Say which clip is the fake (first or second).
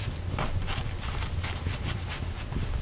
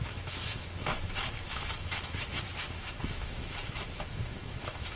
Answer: second